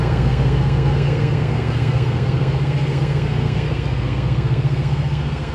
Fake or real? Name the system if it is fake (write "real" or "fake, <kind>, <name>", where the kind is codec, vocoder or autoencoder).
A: fake, codec, SNAC